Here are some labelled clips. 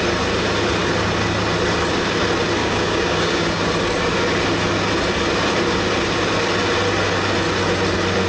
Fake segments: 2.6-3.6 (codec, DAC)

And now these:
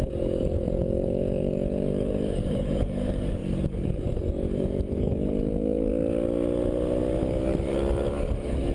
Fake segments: 0.0-5.9 (codec, DAC); 7.2-8.7

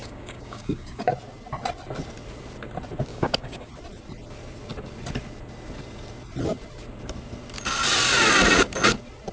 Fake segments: 0.0-1.1 (codec, DAC); 3.1-3.7

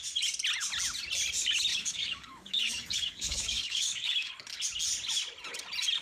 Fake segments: 1.7-4.3 (codec, DAC)

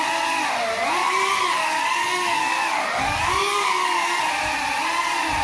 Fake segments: 1.0-4.2 (codec, DAC)

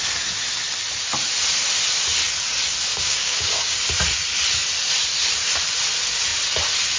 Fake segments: 2.9-3.8 (codec, DAC)